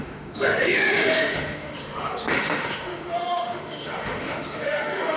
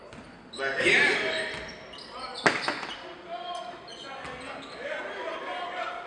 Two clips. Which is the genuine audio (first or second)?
second